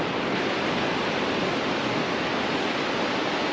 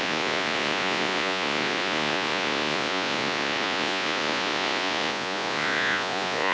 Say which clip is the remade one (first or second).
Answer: second